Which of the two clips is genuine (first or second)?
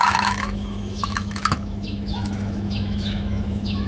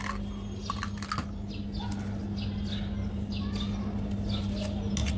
second